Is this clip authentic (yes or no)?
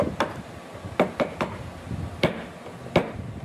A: yes